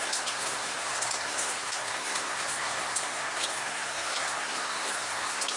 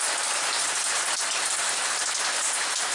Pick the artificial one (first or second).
first